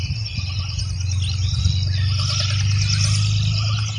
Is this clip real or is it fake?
real